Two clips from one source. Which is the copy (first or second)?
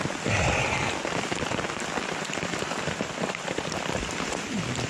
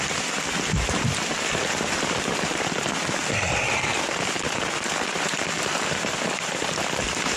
first